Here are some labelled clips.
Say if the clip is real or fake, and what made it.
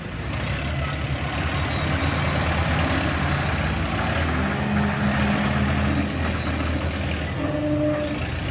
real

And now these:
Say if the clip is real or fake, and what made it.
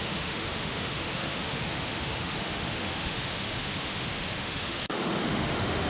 fake, autoencoder, DAC-VAE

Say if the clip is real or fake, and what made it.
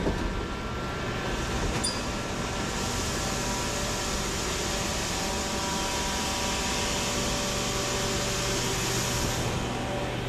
real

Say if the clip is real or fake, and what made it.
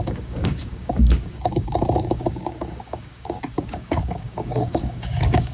fake, codec, DAC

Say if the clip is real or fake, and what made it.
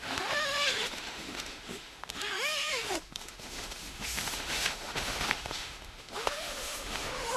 fake, autoencoder, DAC-VAE